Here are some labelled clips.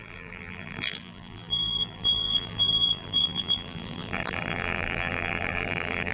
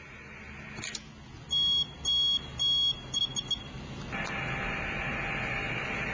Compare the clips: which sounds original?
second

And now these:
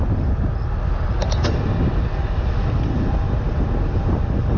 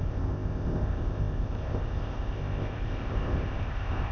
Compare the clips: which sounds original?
first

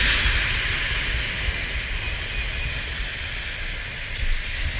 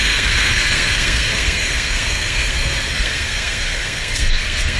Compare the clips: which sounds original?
first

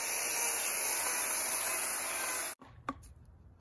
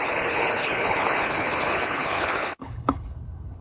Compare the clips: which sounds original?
first